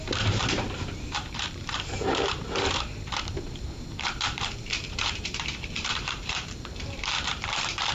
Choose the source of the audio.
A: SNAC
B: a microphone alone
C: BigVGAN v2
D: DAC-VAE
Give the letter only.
C